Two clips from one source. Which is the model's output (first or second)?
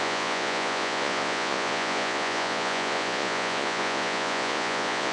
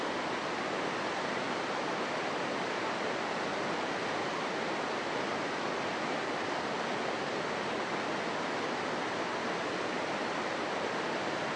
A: first